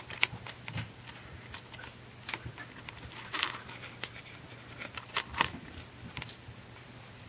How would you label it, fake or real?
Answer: real